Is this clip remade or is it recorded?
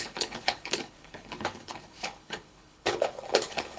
remade